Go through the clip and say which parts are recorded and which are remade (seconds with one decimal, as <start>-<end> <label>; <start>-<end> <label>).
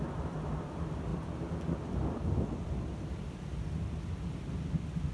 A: 0.0-5.1 recorded